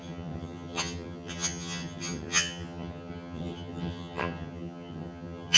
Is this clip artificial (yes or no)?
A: yes